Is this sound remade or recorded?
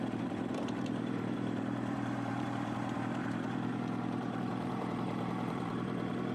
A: remade